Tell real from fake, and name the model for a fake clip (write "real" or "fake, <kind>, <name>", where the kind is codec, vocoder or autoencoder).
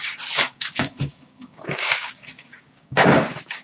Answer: fake, codec, DAC